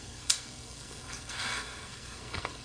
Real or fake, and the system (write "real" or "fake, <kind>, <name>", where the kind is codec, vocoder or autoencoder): fake, codec, SNAC